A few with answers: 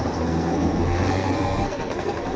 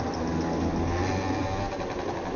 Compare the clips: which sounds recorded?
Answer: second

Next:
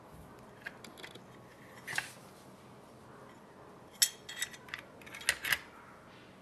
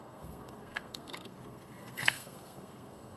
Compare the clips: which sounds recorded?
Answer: first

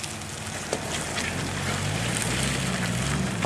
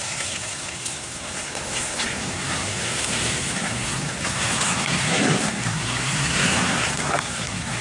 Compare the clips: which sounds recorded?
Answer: first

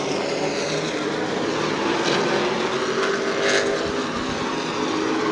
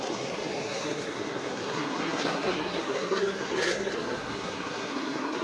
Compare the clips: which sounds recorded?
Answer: first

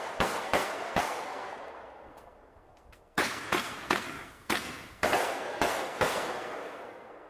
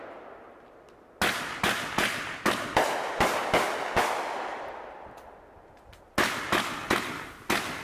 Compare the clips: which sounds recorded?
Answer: second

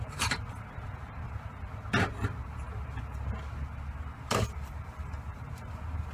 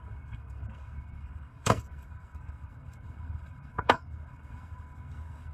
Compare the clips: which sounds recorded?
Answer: first